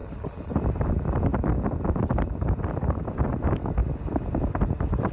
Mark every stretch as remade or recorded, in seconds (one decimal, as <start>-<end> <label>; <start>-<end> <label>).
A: 0.0-0.9 recorded; 0.9-5.1 remade